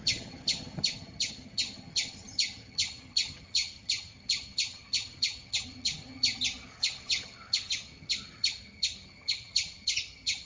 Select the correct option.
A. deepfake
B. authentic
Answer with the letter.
A